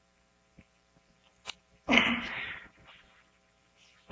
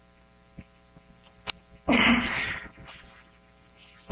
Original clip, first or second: second